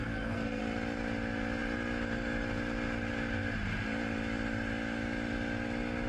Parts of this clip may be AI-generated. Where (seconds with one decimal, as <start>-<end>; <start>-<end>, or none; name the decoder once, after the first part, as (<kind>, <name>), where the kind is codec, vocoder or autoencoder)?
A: 0.0-0.6 (codec, SNAC)